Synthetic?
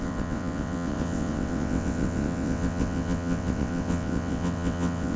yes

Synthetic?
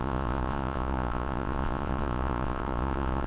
yes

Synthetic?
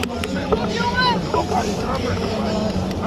no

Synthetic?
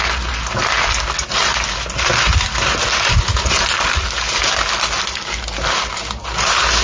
no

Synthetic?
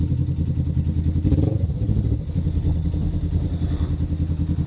no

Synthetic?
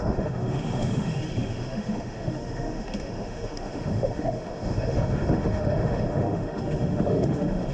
yes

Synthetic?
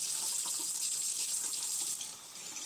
yes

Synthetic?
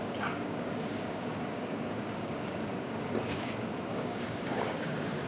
yes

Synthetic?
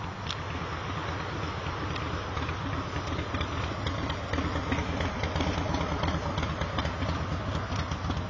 no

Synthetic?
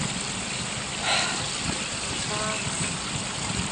no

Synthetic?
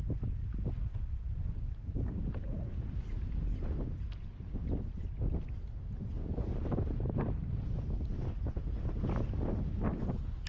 no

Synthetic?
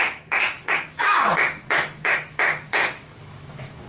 yes